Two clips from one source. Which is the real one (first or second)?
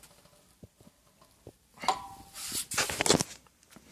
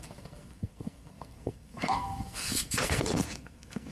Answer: first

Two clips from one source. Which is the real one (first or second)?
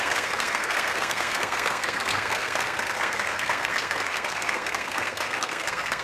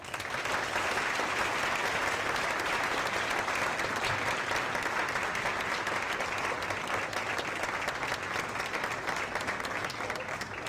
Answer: second